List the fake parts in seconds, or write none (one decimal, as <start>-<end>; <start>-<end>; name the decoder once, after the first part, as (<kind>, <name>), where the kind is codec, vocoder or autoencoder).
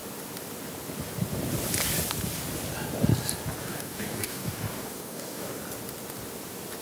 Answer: 3.6-5.6 (codec, DAC)